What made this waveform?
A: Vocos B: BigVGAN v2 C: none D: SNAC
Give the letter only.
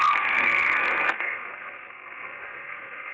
D